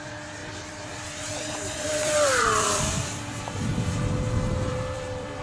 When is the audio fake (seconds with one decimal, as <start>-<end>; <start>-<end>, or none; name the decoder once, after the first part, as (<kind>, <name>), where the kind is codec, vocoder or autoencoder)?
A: 0.0-3.7 (vocoder, BigVGAN v2); 4.6-5.4

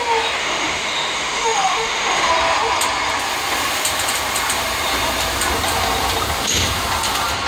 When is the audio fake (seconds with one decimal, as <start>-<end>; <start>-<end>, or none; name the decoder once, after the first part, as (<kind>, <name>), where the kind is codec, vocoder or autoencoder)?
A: 0.4-2.3 (autoencoder, DAC-VAE)